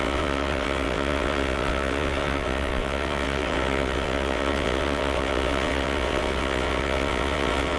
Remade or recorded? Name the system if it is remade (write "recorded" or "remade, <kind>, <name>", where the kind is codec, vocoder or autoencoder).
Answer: remade, vocoder, WaveNeXt